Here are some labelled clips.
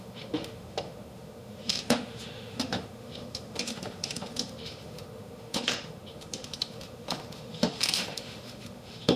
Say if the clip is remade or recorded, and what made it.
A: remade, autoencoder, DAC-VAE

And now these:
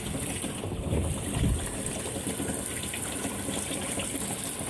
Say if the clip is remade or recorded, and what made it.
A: recorded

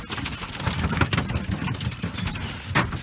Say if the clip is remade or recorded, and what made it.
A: recorded